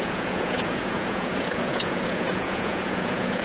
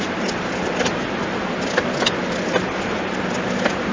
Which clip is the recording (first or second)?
second